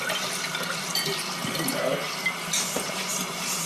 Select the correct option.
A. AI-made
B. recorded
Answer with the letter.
B